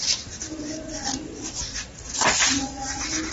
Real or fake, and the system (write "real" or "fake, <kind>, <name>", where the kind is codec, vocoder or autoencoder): fake, vocoder, BigVGAN v2